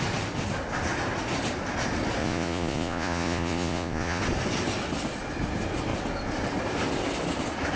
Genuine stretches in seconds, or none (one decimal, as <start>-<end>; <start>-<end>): 0.0-2.2; 4.2-7.8